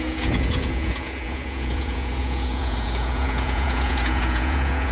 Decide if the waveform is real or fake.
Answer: fake